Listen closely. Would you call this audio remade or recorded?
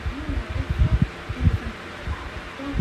recorded